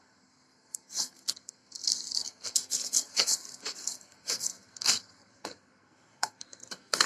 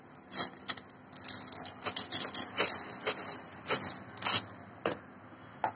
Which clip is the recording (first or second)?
second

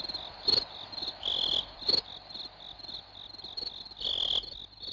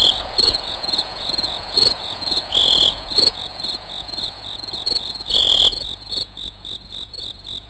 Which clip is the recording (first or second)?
first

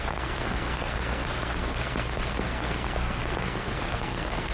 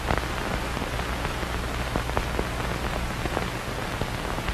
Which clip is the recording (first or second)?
second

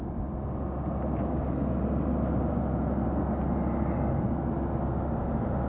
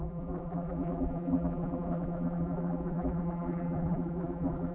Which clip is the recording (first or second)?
first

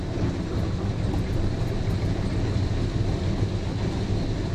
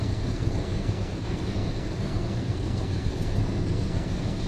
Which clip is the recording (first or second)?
first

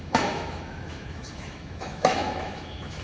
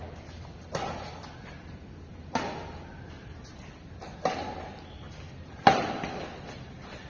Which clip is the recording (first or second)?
second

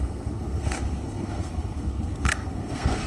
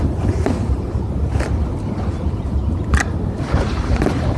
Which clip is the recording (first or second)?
second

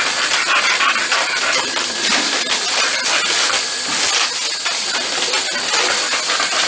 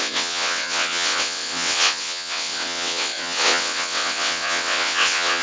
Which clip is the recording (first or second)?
first